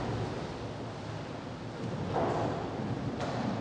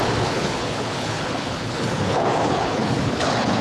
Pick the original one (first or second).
first